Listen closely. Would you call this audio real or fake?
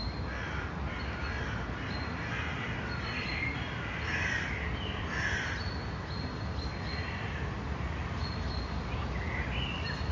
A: real